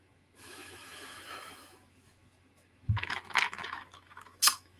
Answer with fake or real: fake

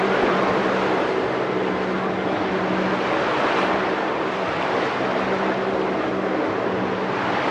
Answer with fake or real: real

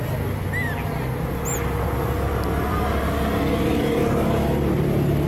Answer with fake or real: real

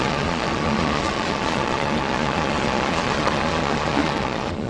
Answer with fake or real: fake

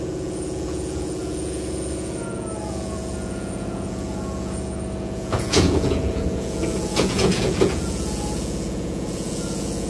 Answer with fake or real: fake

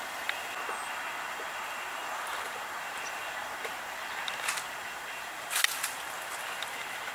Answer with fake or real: real